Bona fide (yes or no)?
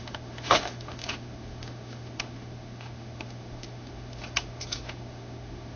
no